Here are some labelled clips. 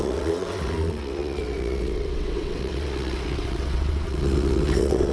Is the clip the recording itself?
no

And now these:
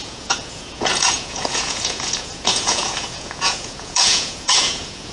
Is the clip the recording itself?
no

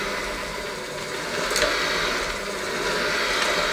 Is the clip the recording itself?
yes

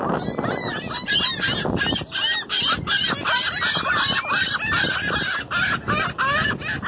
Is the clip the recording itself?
yes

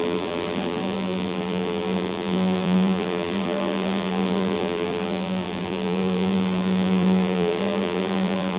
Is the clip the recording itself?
no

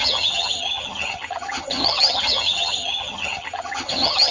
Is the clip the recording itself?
no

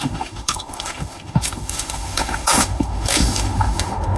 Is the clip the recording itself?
no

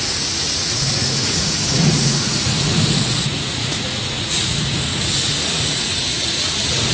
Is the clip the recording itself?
no